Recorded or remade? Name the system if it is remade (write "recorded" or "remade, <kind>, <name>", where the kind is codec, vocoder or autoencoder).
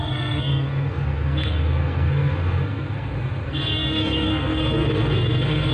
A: remade, codec, SNAC